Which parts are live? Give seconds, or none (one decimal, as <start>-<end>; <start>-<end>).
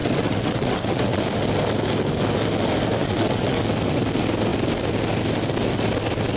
1.2-3.0; 3.6-6.4